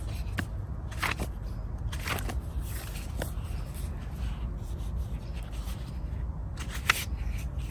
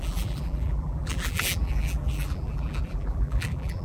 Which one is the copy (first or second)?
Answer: second